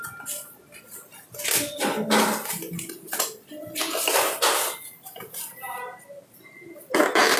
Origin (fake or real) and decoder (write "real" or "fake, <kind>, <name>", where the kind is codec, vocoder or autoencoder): real